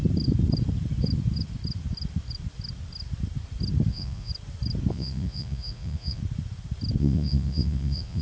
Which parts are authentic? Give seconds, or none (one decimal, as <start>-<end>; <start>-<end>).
0.0-3.9; 4.3-4.9; 6.2-7.0